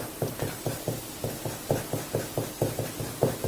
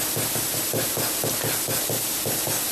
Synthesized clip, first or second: first